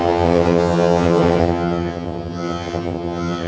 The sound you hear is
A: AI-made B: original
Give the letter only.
A